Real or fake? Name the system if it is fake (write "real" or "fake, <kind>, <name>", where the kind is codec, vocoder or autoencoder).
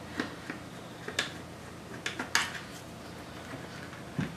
real